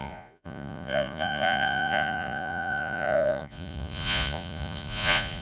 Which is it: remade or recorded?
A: remade